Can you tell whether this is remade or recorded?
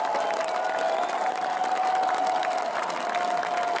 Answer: recorded